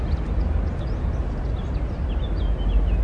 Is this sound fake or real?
real